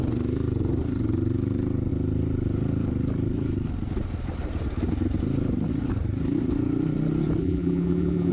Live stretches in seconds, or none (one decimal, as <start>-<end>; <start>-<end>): 0.0-7.4